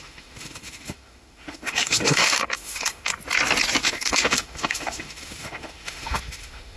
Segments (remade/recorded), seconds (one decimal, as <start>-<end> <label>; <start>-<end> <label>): 0.0-3.1 remade; 3.1-3.8 recorded; 3.8-6.8 remade